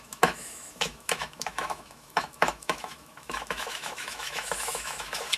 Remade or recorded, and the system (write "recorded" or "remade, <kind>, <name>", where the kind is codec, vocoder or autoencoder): remade, autoencoder, DAC-VAE